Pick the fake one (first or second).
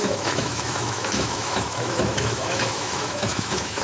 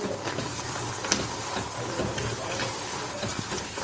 first